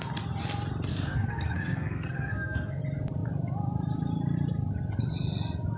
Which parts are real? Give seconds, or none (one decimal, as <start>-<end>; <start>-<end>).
0.0-0.9; 2.8-5.8